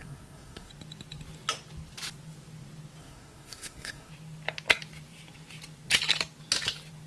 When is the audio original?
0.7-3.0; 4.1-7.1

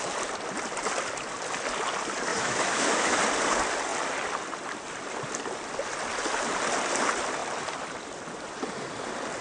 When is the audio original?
0.0-2.3; 3.2-9.4

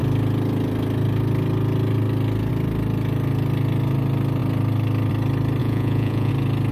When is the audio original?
0.0-5.6; 6.3-6.7

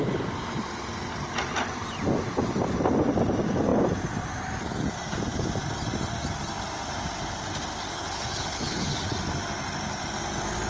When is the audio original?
0.0-7.9; 9.1-10.7

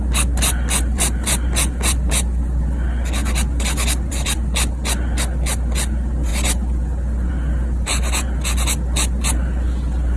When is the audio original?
0.0-10.2

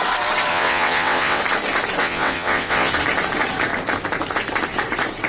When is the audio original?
0.0-0.5; 1.4-2.0; 2.9-5.3

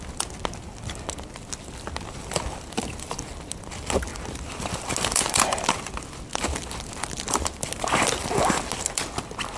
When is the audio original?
0.0-9.6

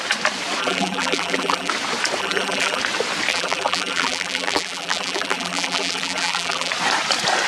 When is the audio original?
0.0-0.6; 1.7-2.2; 2.8-3.3; 6.7-7.5